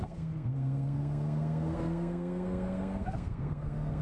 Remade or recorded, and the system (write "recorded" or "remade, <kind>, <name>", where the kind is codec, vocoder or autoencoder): remade, codec, SNAC